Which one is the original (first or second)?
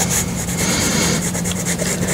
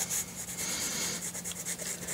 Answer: second